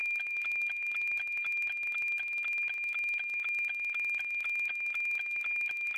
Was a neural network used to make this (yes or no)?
no